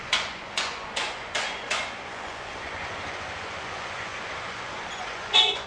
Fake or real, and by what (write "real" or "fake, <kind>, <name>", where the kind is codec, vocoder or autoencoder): fake, vocoder, Vocos